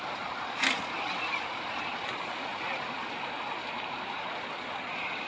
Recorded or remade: recorded